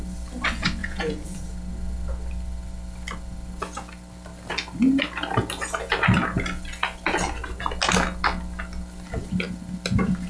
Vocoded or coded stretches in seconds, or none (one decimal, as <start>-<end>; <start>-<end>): 0.8-1.4